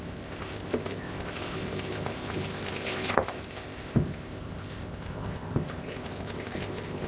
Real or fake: fake